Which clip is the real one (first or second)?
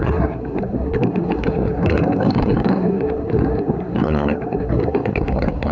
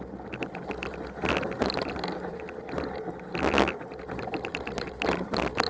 second